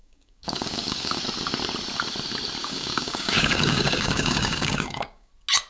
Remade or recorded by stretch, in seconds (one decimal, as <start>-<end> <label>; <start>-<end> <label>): 0.0-1.2 remade; 1.2-2.6 recorded; 2.6-5.3 remade; 5.3-5.7 recorded